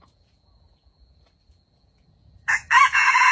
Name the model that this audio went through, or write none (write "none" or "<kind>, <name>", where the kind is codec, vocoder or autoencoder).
vocoder, Vocos